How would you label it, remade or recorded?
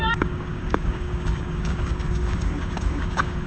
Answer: remade